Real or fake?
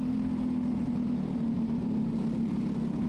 real